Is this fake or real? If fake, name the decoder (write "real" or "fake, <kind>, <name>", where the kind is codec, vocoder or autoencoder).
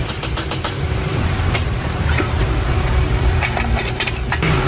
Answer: fake, vocoder, BigVGAN v2